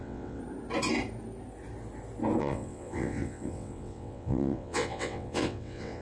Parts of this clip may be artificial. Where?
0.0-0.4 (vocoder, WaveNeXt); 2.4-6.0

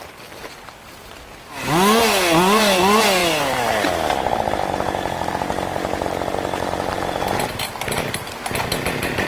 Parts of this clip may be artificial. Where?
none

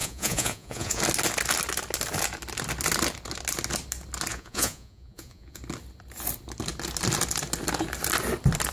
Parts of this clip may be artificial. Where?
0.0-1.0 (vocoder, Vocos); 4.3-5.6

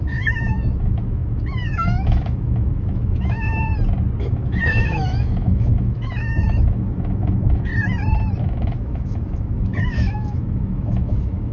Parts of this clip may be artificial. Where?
0.0-3.7 (autoencoder, DAC-VAE); 4.2-7.7; 8.4-11.5